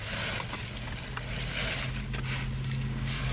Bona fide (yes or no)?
yes